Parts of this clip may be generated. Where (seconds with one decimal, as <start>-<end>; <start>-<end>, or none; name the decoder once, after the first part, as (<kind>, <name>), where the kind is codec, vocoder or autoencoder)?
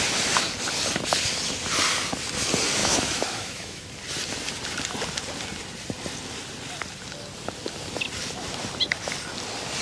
2.8-3.9 (autoencoder, DAC-VAE)